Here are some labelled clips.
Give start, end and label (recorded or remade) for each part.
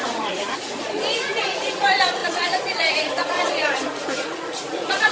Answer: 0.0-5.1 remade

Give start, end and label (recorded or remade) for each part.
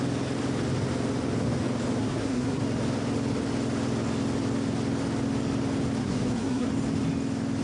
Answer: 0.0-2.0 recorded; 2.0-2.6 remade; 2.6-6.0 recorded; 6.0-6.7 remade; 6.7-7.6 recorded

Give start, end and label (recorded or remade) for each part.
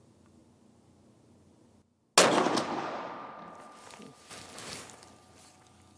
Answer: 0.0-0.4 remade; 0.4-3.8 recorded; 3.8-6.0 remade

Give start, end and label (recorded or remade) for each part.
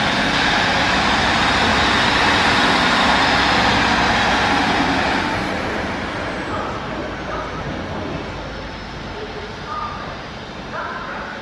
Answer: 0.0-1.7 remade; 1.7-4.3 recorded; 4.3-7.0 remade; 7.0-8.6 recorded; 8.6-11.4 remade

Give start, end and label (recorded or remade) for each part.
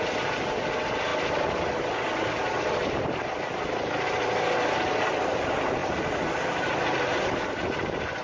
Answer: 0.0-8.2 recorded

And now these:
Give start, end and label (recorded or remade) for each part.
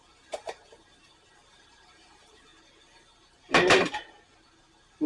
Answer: 0.0-2.5 remade; 2.5-5.1 recorded